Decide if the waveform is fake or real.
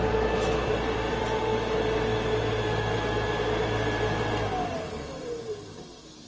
fake